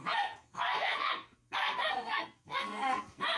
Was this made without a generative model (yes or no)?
no